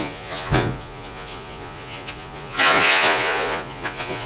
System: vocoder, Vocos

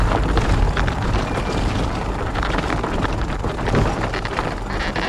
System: none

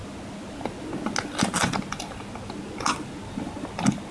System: none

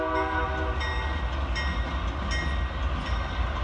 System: none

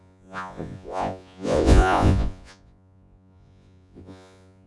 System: vocoder, Vocos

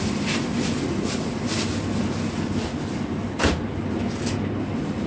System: none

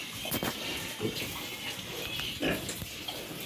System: none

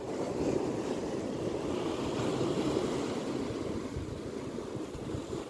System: none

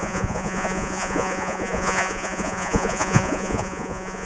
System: vocoder, Vocos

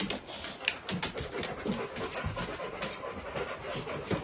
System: none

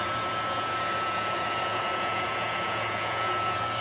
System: vocoder, Vocos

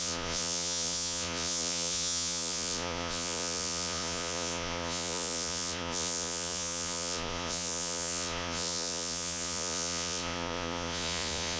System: vocoder, Vocos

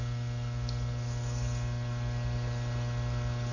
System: none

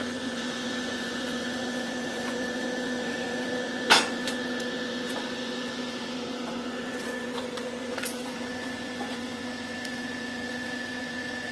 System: vocoder, Vocos